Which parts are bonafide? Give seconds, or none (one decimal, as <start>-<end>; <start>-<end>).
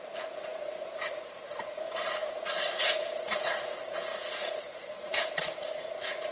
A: none